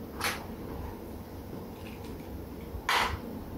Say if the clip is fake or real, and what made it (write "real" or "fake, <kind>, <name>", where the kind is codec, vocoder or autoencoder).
real